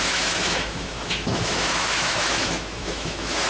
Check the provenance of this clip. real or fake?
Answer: fake